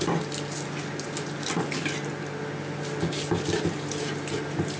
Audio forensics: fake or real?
real